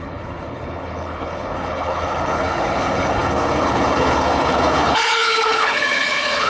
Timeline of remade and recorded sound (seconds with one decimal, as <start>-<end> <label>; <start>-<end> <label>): 0.0-6.5 remade

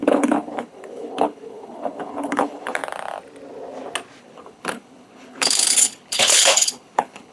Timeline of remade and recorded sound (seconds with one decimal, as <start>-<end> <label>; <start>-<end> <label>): 0.0-2.8 remade; 2.8-4.2 recorded; 4.2-7.3 remade